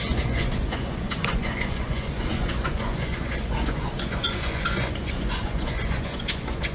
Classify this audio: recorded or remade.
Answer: remade